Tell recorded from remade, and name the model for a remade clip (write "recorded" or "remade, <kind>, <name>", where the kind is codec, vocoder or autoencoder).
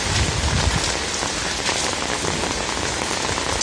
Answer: recorded